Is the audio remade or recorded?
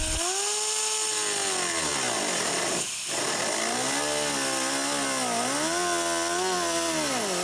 recorded